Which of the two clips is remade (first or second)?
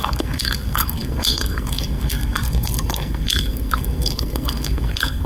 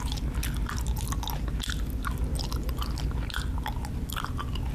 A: first